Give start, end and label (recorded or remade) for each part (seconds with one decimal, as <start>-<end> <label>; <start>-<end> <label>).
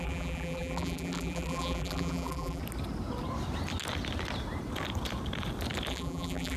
0.0-2.6 remade; 2.6-5.9 recorded; 5.9-6.6 remade